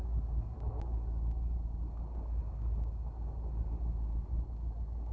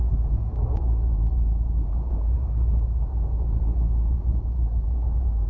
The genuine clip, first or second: first